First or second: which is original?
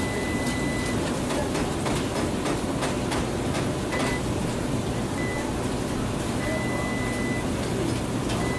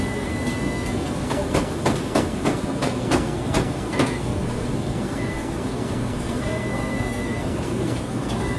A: first